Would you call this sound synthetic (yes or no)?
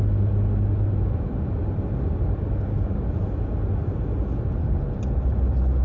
no